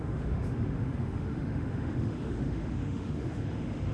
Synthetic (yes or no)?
yes